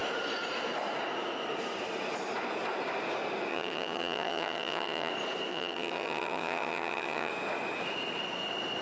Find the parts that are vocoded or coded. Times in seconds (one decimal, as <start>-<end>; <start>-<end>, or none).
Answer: 3.5-5.1; 5.5-7.3